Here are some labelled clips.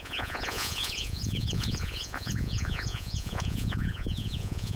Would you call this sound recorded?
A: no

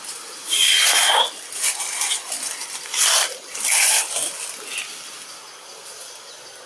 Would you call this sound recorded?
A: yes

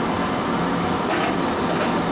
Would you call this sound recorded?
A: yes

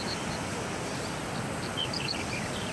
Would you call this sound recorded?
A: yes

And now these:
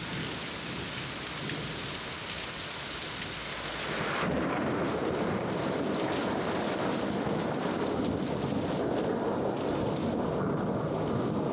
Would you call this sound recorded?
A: yes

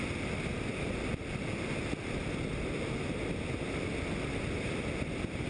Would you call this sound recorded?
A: yes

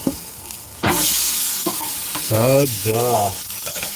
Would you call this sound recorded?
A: no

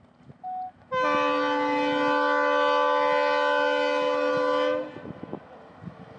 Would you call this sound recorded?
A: yes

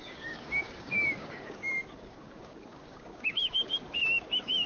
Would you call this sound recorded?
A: no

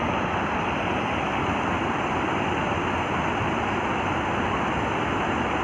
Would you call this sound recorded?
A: yes